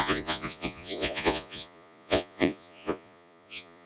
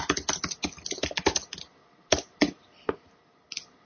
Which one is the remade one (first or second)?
first